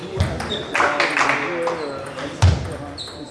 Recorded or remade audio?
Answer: recorded